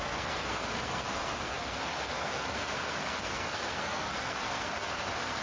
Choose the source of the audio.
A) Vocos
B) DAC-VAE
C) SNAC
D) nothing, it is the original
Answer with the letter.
C